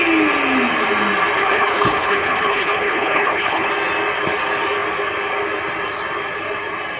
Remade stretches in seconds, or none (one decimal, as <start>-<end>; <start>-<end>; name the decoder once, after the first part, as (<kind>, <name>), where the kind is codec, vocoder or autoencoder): 1.4-3.7 (codec, HILCodec)